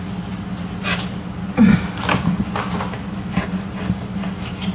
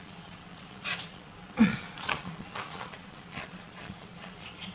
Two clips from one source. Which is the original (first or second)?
first